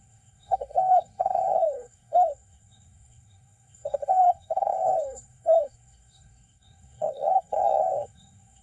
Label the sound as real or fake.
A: fake